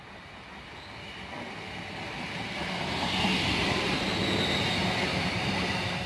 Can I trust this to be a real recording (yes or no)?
yes